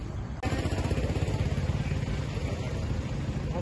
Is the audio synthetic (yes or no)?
no